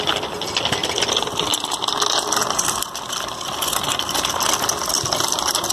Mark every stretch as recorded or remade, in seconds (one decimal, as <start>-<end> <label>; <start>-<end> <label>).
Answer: 0.0-5.7 recorded